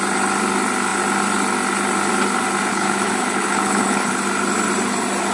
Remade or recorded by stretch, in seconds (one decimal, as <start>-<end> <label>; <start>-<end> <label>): 0.0-2.7 recorded; 2.7-4.1 remade; 4.1-5.3 recorded